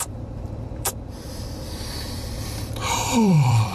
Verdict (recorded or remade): remade